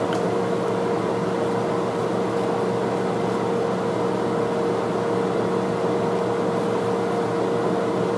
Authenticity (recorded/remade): recorded